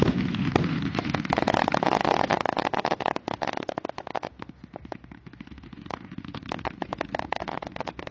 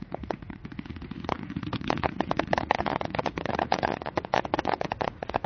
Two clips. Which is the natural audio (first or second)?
first